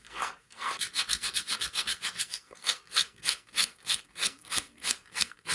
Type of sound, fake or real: fake